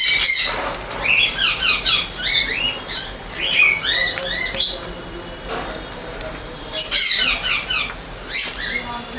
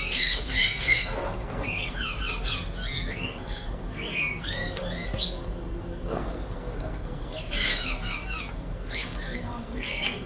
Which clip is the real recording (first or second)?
first